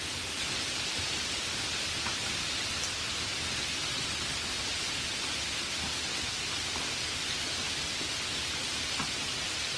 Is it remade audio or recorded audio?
recorded